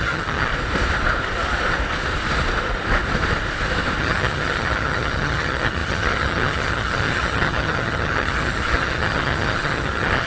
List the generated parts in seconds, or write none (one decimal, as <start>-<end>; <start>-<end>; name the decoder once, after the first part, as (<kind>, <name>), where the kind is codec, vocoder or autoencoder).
0.0-0.5 (vocoder, HiFi-GAN); 4.0-10.3